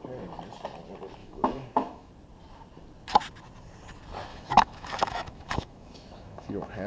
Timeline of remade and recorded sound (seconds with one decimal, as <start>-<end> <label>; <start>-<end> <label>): 0.0-1.2 recorded; 1.2-2.1 remade; 2.1-4.3 recorded; 4.3-6.9 remade